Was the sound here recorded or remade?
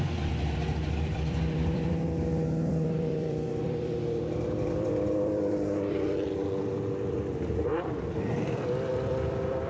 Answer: remade